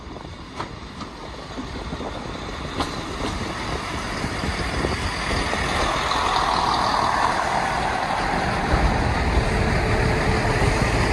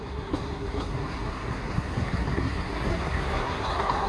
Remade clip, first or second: second